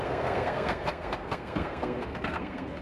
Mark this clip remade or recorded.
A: remade